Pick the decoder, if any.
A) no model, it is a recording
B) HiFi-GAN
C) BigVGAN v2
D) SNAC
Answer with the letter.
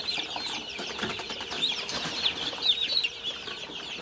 C